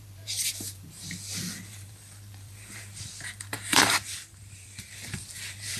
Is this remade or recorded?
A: remade